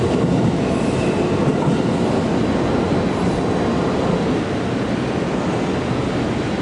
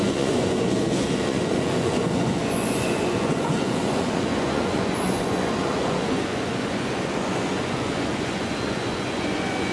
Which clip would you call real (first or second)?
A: first